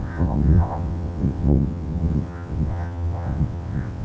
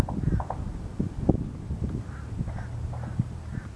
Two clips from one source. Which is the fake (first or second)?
first